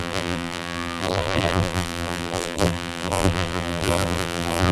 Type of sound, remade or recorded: remade